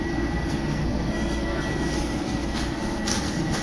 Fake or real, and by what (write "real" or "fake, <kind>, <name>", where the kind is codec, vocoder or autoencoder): fake, codec, SNAC